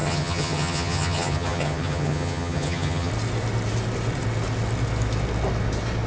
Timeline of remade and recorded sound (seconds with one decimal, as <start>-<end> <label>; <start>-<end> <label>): 0.0-3.1 remade; 3.1-6.1 recorded